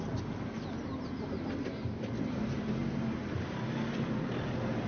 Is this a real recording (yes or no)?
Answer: yes